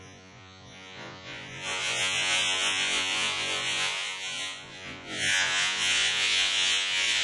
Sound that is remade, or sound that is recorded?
remade